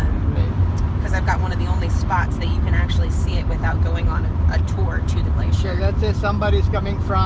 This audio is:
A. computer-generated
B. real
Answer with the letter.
B